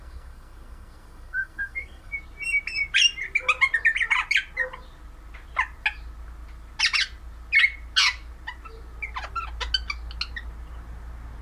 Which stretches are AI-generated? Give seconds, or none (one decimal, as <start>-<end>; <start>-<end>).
0.0-2.1

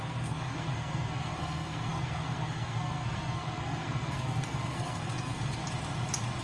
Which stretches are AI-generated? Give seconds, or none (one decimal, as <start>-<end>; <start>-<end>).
0.0-5.6

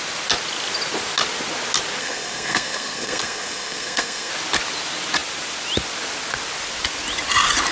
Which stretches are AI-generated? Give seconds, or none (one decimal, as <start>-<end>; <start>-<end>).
2.0-4.3

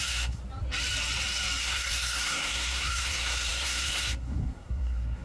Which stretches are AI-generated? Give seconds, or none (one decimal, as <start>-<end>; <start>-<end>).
0.0-0.4; 1.6-5.2